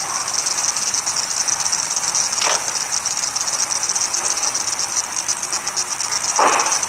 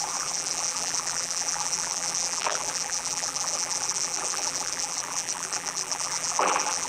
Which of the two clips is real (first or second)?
first